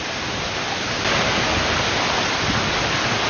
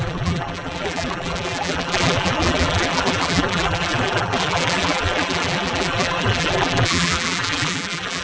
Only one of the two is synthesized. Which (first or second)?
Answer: second